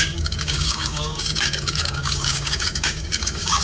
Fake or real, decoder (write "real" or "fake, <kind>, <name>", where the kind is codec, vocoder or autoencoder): fake, codec, DAC